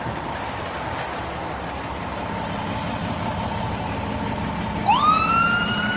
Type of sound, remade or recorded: recorded